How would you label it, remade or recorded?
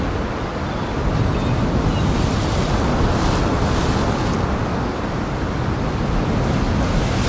recorded